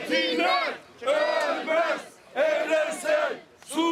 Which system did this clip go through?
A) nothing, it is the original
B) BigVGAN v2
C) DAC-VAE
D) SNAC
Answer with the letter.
A